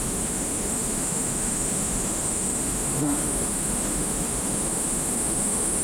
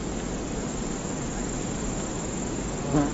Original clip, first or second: second